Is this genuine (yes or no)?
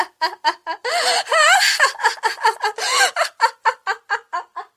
yes